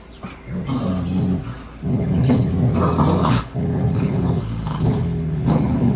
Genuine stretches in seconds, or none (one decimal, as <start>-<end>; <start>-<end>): 0.0-1.9; 2.5-3.2

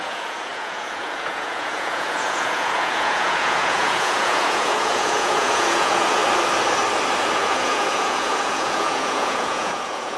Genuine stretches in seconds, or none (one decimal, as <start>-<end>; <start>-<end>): 6.2-7.2

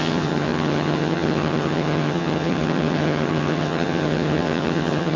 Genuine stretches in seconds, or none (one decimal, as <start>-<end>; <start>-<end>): none